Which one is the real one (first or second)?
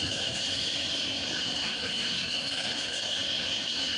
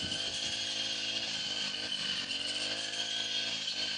second